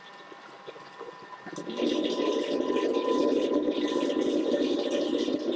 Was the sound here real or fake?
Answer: real